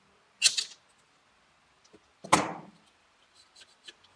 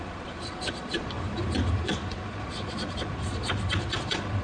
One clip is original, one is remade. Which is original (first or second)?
first